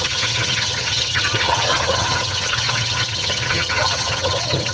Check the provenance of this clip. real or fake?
fake